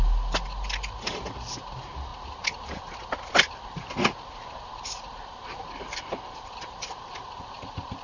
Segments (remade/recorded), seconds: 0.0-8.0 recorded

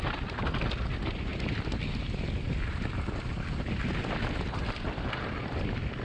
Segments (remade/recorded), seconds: 0.0-6.0 recorded

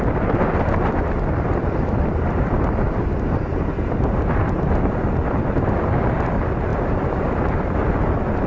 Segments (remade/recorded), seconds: 0.0-8.5 recorded